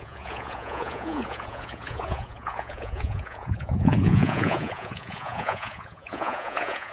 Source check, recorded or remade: remade